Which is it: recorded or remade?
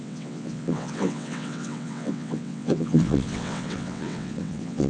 remade